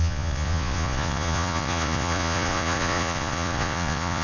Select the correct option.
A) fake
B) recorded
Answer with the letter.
A